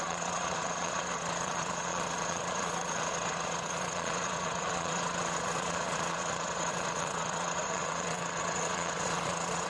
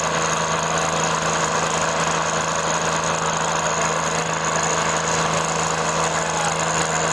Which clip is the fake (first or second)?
first